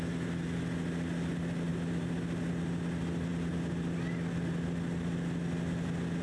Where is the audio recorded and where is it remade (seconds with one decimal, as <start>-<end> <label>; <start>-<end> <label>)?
0.0-6.2 recorded